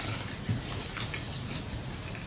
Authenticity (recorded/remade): recorded